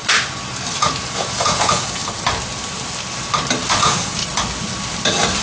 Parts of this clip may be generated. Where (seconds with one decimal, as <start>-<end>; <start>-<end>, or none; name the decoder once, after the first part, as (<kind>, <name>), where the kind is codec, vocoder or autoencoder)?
0.8-2.0 (vocoder, Vocos); 3.8-4.2